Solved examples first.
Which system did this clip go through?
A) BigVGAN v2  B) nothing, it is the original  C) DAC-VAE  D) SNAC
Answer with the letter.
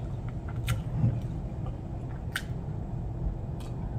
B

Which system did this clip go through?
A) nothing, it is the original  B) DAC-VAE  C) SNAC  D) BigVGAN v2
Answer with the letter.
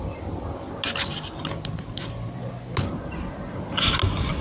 A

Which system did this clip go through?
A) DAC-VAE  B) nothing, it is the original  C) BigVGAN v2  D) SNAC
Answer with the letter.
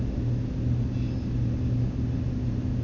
B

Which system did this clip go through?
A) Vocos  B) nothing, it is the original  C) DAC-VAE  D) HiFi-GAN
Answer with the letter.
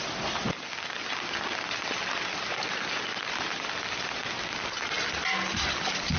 B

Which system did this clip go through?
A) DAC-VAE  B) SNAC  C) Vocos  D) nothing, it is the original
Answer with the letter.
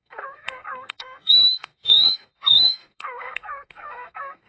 B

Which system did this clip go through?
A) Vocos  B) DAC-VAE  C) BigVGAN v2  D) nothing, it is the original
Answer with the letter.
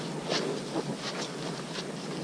D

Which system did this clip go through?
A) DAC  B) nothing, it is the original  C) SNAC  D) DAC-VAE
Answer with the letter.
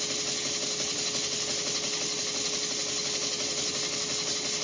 B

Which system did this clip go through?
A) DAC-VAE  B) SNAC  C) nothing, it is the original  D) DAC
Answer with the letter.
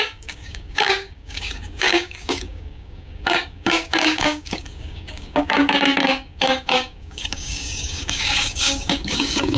D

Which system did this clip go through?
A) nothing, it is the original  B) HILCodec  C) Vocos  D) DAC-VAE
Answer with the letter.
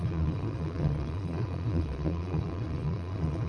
C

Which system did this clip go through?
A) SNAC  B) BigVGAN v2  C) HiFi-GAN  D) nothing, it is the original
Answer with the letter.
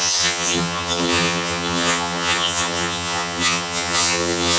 C